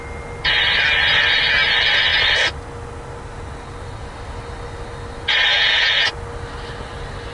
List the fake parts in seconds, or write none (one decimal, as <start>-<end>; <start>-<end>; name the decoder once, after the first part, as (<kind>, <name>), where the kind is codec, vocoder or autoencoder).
5.5-6.1 (vocoder, Vocos)